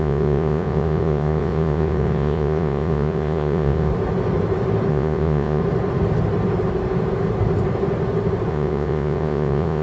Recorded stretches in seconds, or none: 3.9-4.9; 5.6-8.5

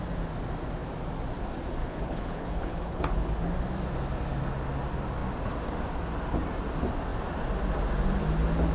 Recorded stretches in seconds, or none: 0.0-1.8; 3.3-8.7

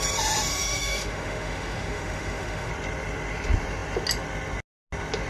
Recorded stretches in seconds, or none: 0.0-0.5; 2.7-5.3

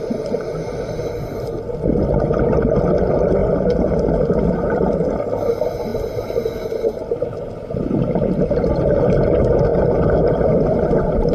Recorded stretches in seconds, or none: 0.0-11.3

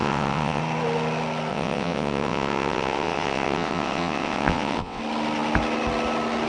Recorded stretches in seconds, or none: 0.6-1.5; 5.0-6.5

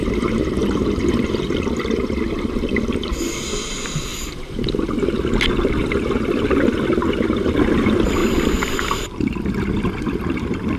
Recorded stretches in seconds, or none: 1.7-4.1; 5.3-7.0; 7.7-8.2; 9.2-10.8

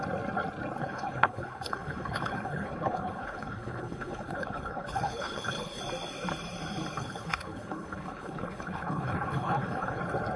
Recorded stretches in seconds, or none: 0.0-0.8; 5.8-7.0; 10.0-10.4